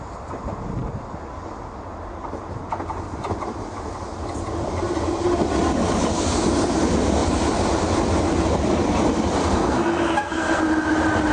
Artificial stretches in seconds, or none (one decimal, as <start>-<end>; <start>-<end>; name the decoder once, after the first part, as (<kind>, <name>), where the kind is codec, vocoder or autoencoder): 9.4-10.6 (codec, SNAC)